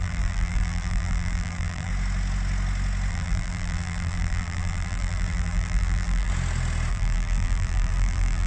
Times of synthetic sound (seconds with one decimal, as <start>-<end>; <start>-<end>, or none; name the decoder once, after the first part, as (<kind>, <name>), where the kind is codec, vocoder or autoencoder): 0.0-1.9 (vocoder, BigVGAN v2); 3.1-6.3; 6.9-8.5